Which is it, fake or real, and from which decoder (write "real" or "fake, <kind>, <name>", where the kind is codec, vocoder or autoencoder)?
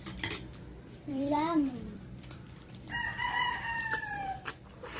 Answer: fake, vocoder, BigVGAN v2